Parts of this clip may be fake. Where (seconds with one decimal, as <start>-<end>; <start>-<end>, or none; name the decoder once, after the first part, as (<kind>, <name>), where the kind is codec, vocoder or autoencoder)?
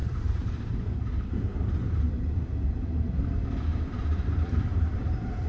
0.0-3.3 (vocoder, BigVGAN v2); 3.7-5.5